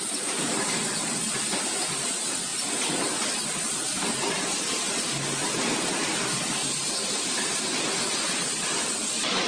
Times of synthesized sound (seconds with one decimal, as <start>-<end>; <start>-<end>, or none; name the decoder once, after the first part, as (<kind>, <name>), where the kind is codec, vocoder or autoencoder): none